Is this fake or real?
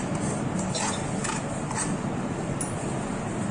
real